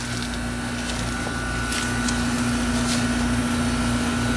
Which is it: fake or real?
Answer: real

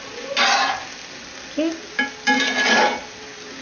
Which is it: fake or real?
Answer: real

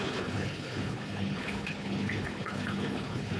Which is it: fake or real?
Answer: fake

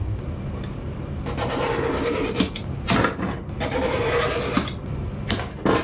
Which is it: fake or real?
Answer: real